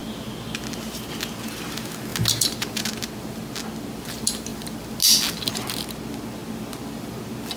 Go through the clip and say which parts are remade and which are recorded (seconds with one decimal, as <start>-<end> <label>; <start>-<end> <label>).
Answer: 0.0-7.6 recorded